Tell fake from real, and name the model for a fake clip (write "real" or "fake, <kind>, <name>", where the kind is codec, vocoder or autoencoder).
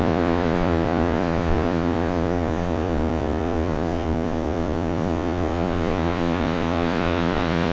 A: fake, vocoder, Vocos